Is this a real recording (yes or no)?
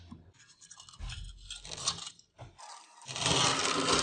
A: yes